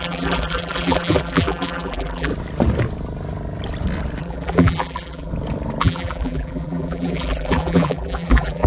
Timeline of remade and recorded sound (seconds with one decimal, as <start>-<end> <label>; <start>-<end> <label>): 0.0-2.3 remade; 2.3-4.2 recorded; 4.2-5.3 remade; 5.3-5.8 recorded; 5.8-8.7 remade